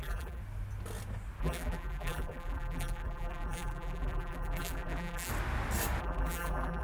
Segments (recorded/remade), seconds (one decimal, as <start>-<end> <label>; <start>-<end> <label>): 0.0-0.4 remade; 0.4-1.4 recorded; 1.4-5.3 remade; 5.3-6.0 recorded; 6.0-6.8 remade